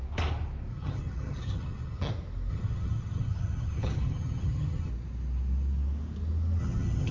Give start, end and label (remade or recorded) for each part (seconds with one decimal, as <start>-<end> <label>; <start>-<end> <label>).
0.0-0.7 recorded; 0.7-2.1 remade; 2.1-2.5 recorded; 2.5-4.9 remade; 4.9-6.6 recorded; 6.6-7.1 remade

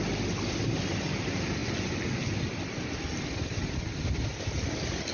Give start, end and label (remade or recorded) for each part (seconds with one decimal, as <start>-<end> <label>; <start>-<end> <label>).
0.0-5.1 recorded

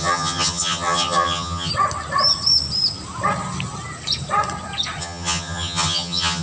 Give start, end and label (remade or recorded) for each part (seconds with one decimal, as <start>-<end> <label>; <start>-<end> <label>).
0.0-1.7 remade; 1.7-5.0 recorded; 5.0-6.4 remade

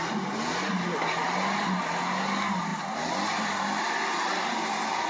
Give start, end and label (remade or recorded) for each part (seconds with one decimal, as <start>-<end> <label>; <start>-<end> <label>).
0.0-5.1 recorded